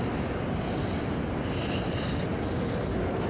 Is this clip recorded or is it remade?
recorded